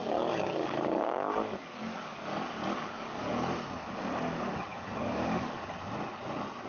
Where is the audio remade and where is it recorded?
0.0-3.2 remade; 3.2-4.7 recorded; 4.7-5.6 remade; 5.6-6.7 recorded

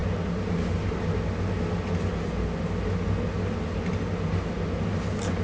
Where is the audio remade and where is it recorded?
0.0-5.4 recorded

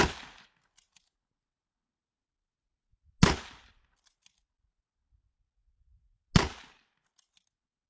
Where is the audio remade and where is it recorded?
0.0-7.9 recorded